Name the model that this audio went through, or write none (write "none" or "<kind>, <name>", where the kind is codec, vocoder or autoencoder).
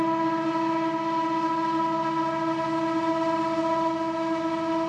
none